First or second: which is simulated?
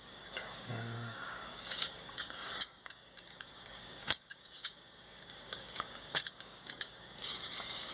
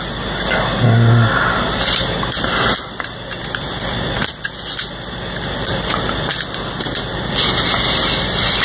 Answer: first